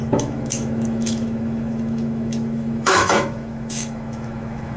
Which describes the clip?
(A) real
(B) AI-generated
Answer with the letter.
B